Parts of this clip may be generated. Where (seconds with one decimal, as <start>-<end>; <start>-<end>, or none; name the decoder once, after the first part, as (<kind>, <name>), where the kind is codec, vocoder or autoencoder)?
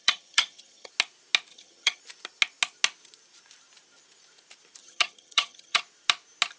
0.0-0.9 (vocoder, HiFi-GAN); 1.5-2.0; 4.8-5.8